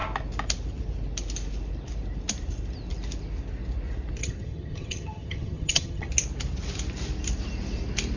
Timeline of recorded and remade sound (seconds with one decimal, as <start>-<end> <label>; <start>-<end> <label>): 0.0-4.2 recorded; 4.2-6.1 remade; 6.1-8.2 recorded